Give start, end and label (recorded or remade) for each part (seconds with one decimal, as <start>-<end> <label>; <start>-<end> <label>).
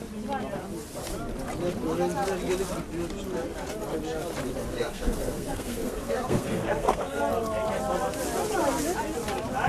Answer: 0.0-4.7 recorded; 4.7-7.2 remade; 7.2-9.7 recorded